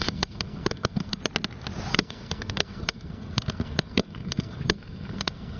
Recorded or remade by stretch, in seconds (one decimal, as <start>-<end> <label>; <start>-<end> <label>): 0.0-1.2 remade; 1.2-1.9 recorded; 1.9-5.6 remade